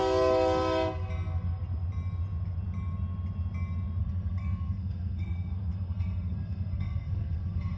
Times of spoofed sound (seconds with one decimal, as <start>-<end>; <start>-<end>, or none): 4.0-7.8